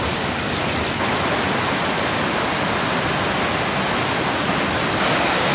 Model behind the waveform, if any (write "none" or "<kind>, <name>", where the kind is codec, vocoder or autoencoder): none